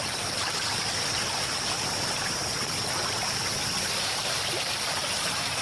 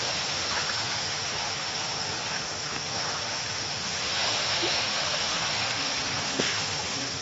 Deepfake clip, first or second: second